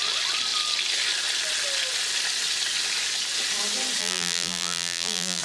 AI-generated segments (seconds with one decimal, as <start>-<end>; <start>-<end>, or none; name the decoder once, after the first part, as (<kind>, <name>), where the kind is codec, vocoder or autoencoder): 4.0-5.4 (vocoder, BigVGAN v2)